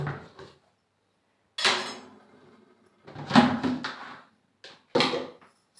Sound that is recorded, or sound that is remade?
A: recorded